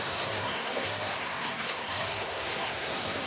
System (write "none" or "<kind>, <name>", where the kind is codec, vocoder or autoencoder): codec, SNAC